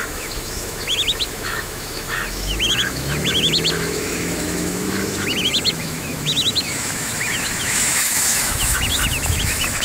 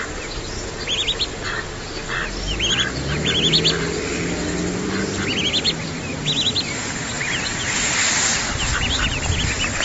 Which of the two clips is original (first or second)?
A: second